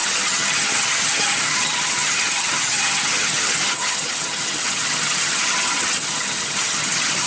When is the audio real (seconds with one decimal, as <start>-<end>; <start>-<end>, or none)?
none